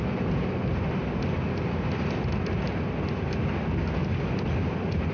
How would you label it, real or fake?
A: real